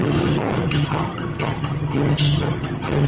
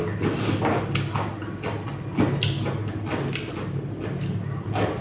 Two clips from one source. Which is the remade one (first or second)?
first